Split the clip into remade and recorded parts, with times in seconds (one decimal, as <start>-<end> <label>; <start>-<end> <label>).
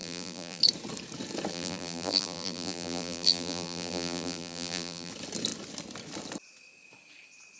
0.0-0.6 remade; 0.6-1.5 recorded; 1.5-5.1 remade; 5.1-7.6 recorded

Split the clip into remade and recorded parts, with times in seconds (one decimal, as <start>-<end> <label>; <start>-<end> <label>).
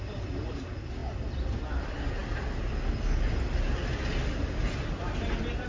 0.0-5.7 recorded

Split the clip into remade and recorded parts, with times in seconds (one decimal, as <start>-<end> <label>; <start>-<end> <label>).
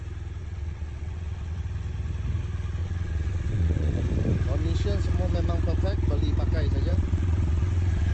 0.0-0.4 recorded; 0.4-1.6 remade; 1.6-2.8 recorded; 2.8-4.0 remade; 4.0-6.9 recorded; 6.9-8.1 remade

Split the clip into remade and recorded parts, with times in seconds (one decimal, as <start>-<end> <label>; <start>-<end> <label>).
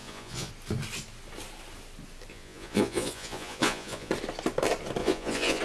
0.0-0.5 remade; 0.5-2.3 recorded; 2.3-4.1 remade; 4.1-5.0 recorded; 5.0-5.6 remade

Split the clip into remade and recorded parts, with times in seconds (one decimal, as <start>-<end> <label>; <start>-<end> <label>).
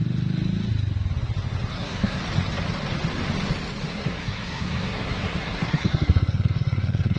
0.0-1.7 recorded; 1.7-2.2 remade; 2.2-3.9 recorded; 3.9-7.2 remade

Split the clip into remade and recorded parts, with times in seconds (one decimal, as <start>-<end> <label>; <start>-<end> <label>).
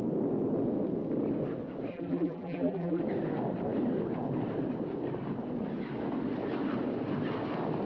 0.0-1.9 recorded; 1.9-3.0 remade; 3.0-7.9 recorded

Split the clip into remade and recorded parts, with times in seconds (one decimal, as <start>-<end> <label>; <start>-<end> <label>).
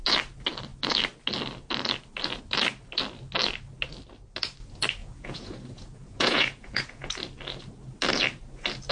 0.0-5.0 recorded; 5.0-7.1 remade; 7.1-8.9 recorded